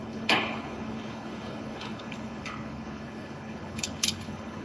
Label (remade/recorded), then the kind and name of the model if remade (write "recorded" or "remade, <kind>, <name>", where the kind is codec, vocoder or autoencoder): remade, codec, HILCodec